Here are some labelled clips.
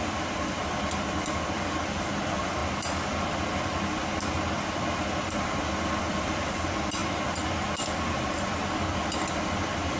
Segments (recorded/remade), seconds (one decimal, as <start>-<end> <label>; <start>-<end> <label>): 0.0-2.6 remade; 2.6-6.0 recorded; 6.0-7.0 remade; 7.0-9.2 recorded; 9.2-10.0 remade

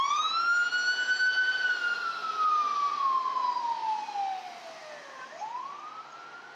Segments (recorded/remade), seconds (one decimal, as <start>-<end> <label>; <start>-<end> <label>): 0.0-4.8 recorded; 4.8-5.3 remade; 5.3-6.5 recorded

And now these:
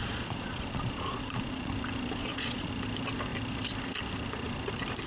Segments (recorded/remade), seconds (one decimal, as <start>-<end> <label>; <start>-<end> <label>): 0.0-1.7 remade; 1.7-2.2 recorded; 2.2-2.7 remade; 2.7-5.1 recorded

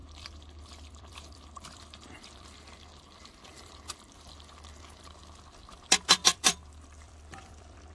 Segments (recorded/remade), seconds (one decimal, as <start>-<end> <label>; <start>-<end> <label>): 0.0-4.3 remade; 4.3-6.2 recorded; 6.2-7.9 remade

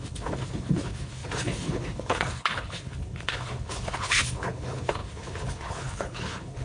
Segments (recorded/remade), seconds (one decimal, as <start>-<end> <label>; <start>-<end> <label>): 0.0-6.6 remade